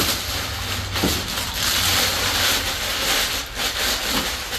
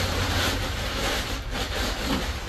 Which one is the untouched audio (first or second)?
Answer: first